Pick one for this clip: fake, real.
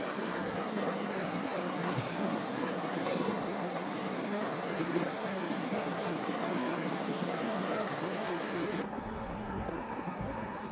fake